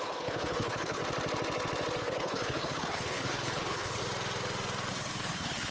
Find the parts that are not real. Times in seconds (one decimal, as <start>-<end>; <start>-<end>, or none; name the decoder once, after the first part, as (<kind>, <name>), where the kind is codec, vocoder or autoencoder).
0.0-1.0 (codec, HILCodec); 2.0-4.0; 4.9-5.7